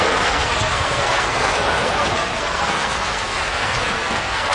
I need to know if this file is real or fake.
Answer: fake